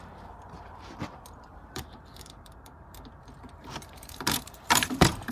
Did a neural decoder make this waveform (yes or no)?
yes